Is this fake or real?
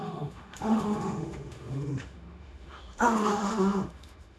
fake